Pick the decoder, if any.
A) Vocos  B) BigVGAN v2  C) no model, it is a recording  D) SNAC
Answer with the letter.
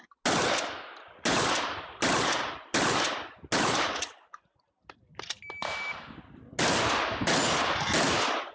C